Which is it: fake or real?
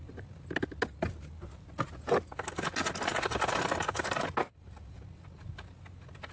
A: real